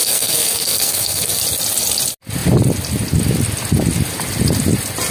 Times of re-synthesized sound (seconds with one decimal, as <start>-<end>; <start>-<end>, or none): 0.0-1.4